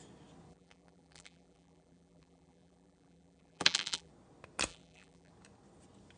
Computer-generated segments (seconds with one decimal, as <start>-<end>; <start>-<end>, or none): 0.5-4.1; 4.7-5.3